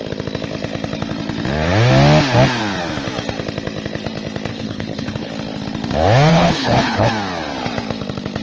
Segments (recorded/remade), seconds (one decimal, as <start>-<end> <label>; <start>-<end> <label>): 0.0-4.5 recorded; 4.5-5.3 remade; 5.3-6.3 recorded; 6.3-7.1 remade; 7.1-8.4 recorded